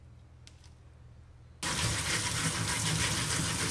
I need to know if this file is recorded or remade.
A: recorded